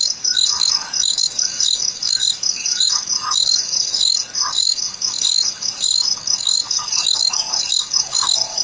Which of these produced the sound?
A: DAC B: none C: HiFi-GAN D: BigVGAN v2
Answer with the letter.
A